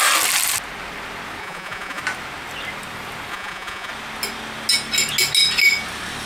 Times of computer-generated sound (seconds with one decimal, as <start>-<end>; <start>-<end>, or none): 1.4-2.0; 3.3-3.9